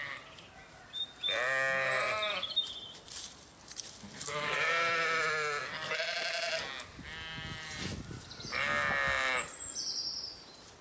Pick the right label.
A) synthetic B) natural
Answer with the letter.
B